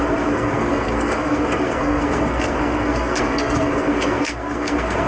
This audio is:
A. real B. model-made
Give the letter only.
B